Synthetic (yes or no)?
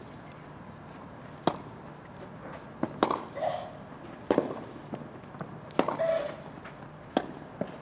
no